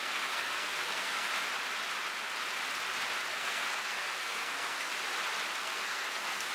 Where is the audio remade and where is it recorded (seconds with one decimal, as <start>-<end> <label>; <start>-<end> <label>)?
0.0-1.3 remade; 1.3-3.3 recorded; 3.3-4.9 remade; 4.9-5.6 recorded; 5.6-6.5 remade